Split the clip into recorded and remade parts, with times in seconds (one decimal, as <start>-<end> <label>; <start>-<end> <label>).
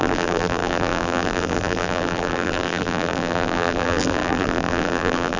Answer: 0.0-5.4 remade